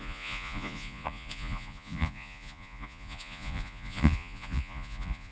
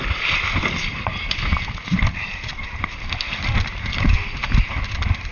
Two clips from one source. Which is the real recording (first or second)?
second